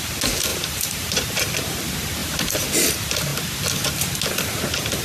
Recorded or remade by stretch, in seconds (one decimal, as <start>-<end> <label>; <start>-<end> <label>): 0.0-0.5 recorded; 0.5-1.8 remade; 1.8-5.0 recorded